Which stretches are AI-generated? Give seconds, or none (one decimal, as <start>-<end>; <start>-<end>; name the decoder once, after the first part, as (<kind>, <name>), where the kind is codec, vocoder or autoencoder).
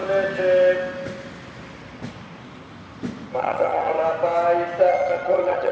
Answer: 3.4-3.9 (vocoder, HiFi-GAN); 4.9-5.7